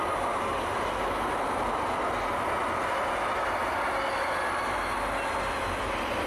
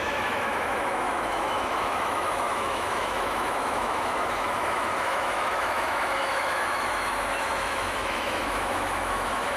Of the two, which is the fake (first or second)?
second